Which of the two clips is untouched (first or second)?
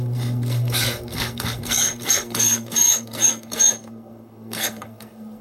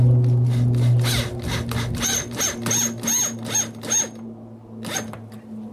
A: second